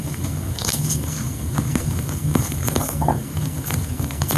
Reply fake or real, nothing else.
fake